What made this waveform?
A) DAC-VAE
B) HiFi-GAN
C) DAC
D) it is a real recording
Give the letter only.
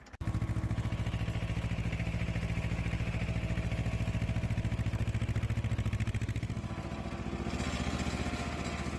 D